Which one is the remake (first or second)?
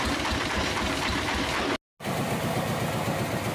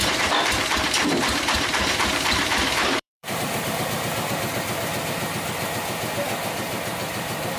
second